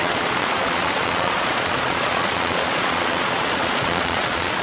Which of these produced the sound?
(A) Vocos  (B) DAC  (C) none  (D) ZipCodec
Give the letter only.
A